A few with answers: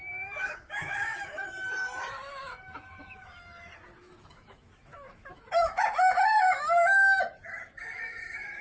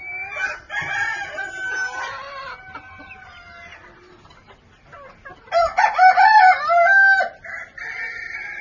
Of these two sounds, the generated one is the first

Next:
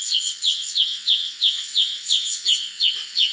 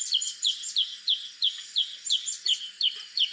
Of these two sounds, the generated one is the first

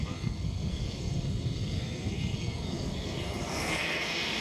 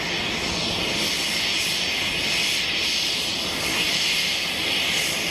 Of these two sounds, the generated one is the first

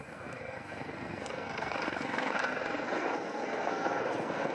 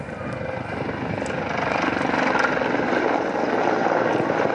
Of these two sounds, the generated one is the first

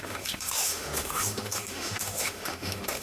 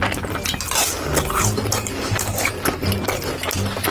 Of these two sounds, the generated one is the first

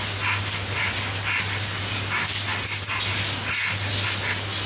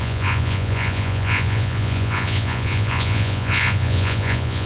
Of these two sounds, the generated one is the second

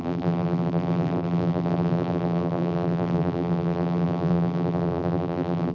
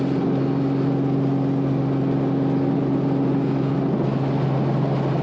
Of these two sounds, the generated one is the first